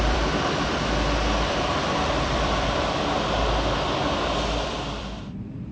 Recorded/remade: remade